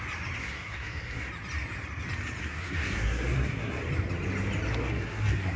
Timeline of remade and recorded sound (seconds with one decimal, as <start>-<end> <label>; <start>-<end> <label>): 0.0-0.4 recorded; 0.4-1.3 remade; 1.3-2.4 recorded; 2.4-3.8 remade; 3.8-4.8 recorded; 4.8-5.6 remade